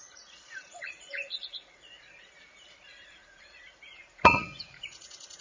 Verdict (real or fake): fake